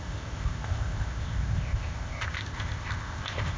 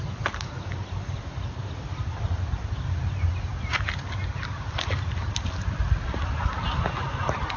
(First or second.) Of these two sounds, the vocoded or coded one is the first